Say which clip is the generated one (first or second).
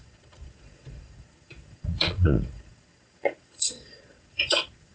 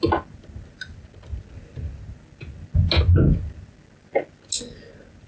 first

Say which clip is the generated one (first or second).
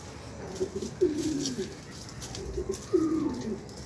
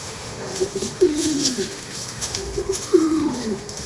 second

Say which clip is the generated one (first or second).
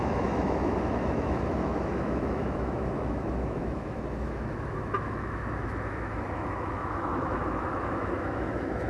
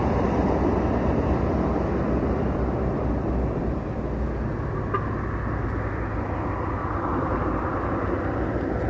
first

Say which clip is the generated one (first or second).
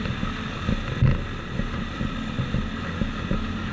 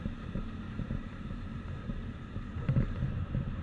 second